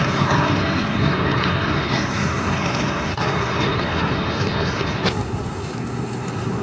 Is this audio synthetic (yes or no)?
yes